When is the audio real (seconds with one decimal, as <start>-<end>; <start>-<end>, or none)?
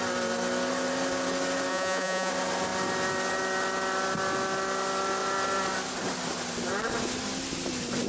0.0-1.7; 2.3-8.1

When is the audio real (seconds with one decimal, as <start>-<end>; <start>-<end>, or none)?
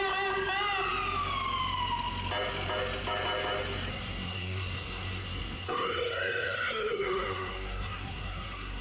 0.0-3.9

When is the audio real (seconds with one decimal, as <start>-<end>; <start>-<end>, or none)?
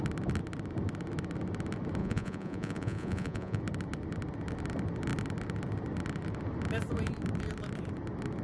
0.0-2.0; 3.6-8.4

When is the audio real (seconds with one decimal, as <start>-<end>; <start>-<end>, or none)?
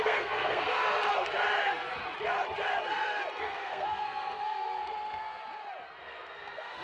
0.8-3.4; 5.4-6.0